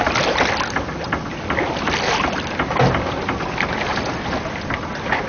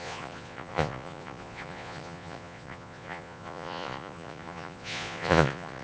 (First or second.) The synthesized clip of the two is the second